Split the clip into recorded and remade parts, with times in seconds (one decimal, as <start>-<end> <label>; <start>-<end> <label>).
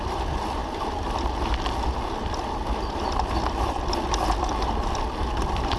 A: 0.0-5.8 recorded